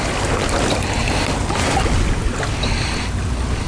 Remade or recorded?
recorded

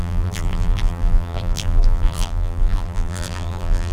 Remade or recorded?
remade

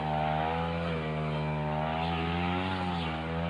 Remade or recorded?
recorded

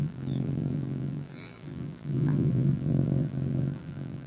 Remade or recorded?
remade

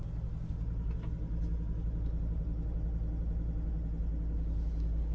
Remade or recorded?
recorded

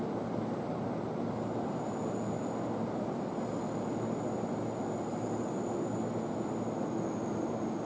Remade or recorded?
recorded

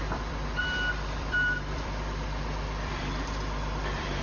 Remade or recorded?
remade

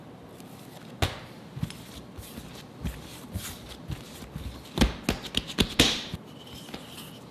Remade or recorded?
recorded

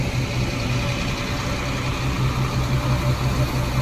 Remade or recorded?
recorded